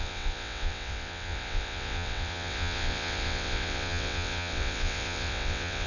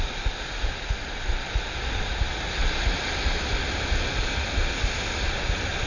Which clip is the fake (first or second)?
first